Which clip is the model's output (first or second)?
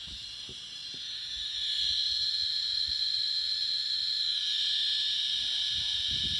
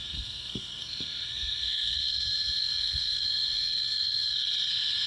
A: second